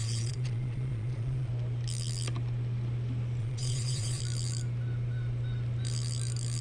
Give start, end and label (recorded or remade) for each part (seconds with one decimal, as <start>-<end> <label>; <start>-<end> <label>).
0.0-1.5 remade; 1.5-3.4 recorded; 3.4-4.2 remade; 4.2-6.6 recorded